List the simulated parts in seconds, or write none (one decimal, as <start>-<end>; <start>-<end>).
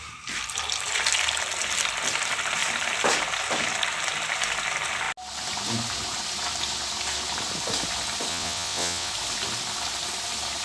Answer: 8.3-9.1